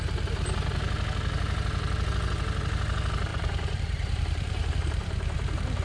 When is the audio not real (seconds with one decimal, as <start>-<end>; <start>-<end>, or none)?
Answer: 3.3-5.8